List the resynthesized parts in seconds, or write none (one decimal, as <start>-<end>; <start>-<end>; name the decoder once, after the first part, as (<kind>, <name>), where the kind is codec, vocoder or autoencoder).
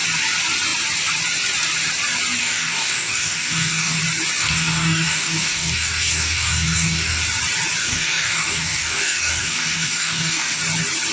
2.4-4.0 (codec, DAC); 4.4-7.2; 7.8-10.6